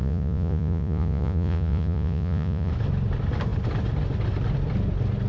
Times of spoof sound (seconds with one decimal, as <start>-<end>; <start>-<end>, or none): 0.0-2.7